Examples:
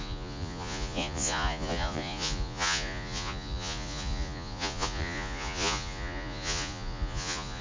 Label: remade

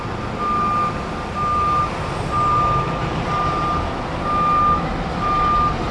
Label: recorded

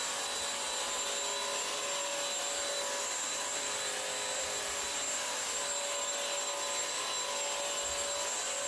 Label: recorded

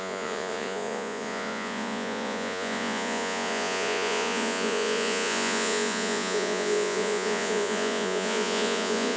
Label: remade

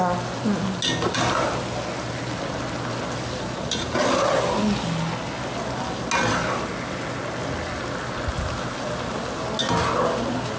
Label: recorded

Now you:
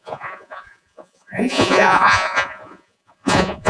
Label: remade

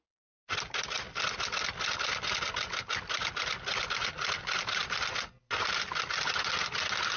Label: recorded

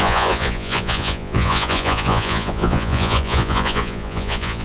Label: remade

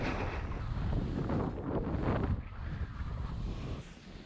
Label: recorded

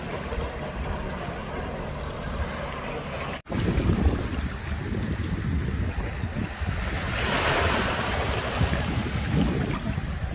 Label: recorded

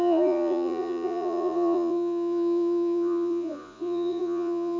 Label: remade